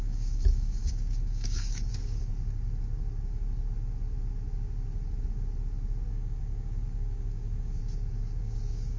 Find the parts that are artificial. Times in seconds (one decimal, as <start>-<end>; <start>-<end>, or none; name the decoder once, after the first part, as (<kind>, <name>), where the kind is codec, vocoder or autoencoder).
0.0-2.3 (codec, DAC); 6.1-7.8; 8.4-9.0